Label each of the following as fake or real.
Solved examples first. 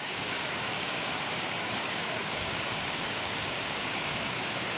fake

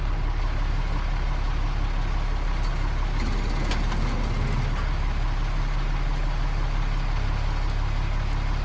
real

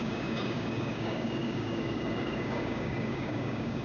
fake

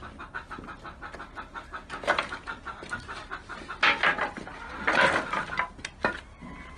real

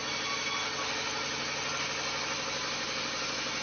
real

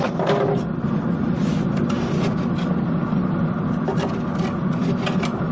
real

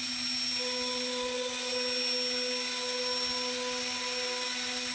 real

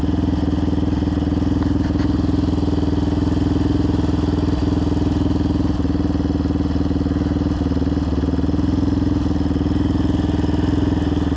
real